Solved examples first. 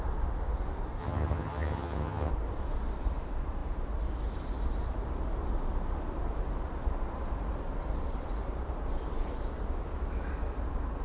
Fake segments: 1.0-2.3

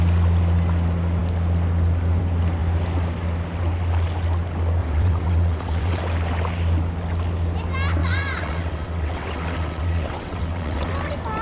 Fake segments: 4.8-6.0; 8.0-10.9

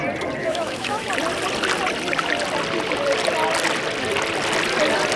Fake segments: 0.4-1.1

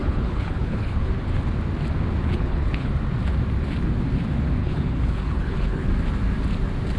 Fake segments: 0.0-1.1; 2.2-2.9; 4.6-5.9

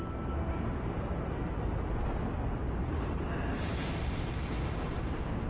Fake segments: 2.6-4.2